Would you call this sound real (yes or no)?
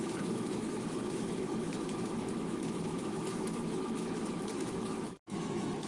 no